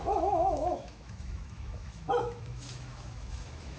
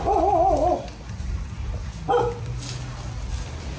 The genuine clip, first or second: second